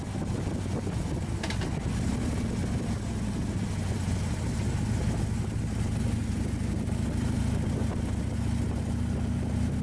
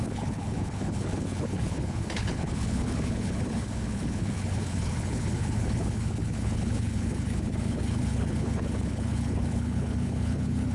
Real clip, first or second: first